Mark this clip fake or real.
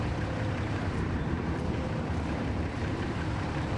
fake